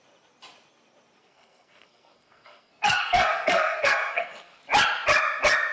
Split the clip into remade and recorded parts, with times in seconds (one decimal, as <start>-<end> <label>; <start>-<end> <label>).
0.0-1.2 recorded; 1.2-4.6 remade; 4.6-5.7 recorded